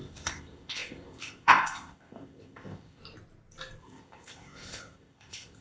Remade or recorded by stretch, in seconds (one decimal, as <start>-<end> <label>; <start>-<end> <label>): 0.0-3.0 remade; 3.0-3.8 recorded; 3.8-5.6 remade